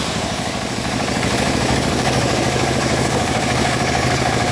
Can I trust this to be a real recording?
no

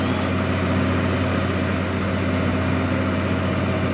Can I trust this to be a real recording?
yes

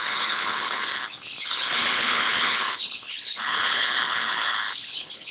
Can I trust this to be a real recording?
no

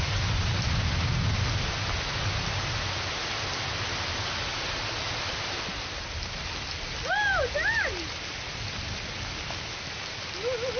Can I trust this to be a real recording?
yes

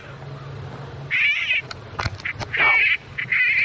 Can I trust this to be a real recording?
yes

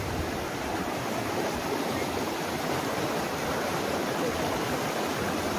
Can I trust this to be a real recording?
no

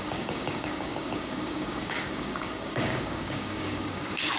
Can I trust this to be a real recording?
no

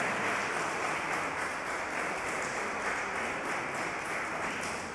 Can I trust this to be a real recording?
yes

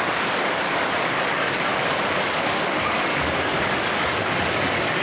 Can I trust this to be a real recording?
no